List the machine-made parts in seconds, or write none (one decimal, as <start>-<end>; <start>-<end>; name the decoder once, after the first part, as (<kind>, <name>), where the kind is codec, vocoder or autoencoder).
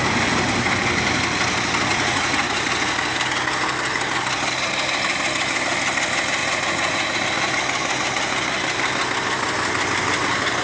1.9-2.6 (vocoder, Vocos); 6.4-7.2